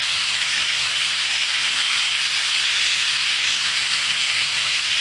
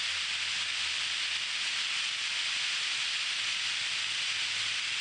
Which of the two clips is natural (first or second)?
second